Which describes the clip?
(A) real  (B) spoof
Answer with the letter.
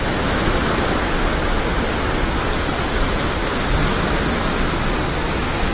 A